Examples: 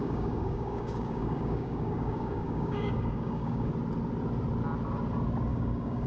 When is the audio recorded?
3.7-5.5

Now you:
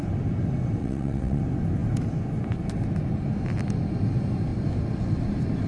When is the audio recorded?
0.0-0.8; 1.4-5.7